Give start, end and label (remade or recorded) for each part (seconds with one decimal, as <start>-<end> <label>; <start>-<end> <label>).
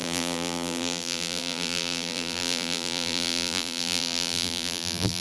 0.0-5.2 remade